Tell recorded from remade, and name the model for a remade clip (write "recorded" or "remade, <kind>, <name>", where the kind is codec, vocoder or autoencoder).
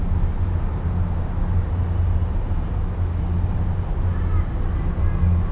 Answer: recorded